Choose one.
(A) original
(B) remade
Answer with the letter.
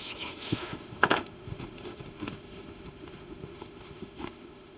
B